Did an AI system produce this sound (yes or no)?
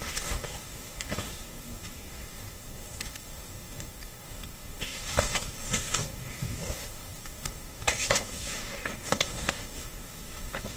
yes